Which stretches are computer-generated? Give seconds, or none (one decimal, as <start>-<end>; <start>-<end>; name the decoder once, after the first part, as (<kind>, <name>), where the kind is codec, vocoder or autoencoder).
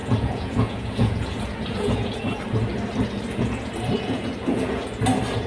0.0-2.4 (vocoder, Vocos); 3.3-5.0